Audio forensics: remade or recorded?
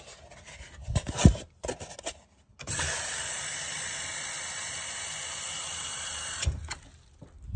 recorded